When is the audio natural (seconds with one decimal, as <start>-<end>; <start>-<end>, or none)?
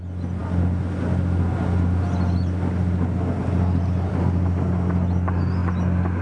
0.0-6.2